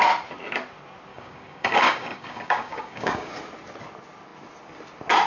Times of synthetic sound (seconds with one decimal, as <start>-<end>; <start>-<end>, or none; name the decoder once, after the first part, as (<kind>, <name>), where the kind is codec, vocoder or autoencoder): 1.1-3.3 (codec, DAC)